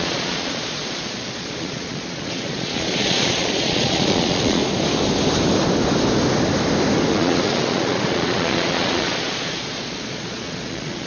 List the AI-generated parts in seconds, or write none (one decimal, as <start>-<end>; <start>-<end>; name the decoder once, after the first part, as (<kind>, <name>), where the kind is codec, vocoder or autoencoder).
0.0-4.6 (vocoder, Vocos); 7.1-11.1